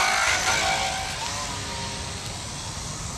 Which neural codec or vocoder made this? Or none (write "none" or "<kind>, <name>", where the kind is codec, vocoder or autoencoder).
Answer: none